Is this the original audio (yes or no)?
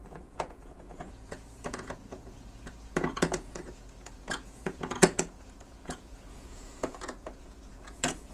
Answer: no